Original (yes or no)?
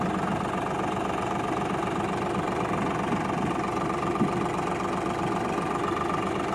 yes